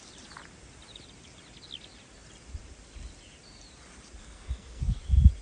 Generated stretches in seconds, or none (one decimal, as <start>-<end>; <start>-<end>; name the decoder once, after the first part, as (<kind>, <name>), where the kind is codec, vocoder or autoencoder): 4.2-5.0 (codec, SNAC)